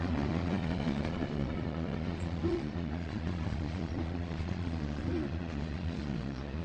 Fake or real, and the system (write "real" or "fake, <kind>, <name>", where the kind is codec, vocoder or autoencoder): fake, vocoder, Vocos